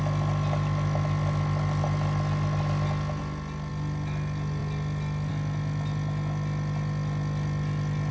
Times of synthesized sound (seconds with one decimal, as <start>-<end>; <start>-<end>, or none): none